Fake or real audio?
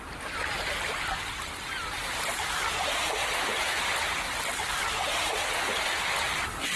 real